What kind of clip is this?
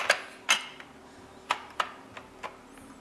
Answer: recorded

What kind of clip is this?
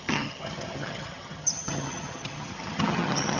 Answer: remade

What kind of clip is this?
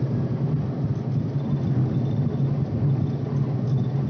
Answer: recorded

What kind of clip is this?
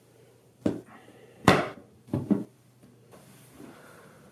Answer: remade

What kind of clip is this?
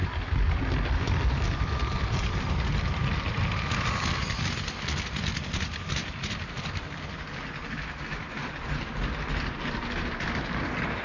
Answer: recorded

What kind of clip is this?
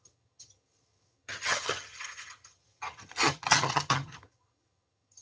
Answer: remade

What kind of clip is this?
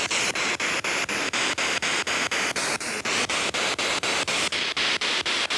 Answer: recorded